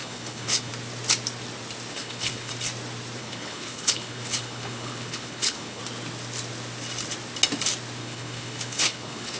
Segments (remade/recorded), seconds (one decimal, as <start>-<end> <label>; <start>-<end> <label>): 0.0-0.7 remade; 0.7-1.9 recorded; 1.9-2.5 remade; 2.5-3.2 recorded; 3.2-5.8 remade; 5.8-8.0 recorded; 8.0-9.4 remade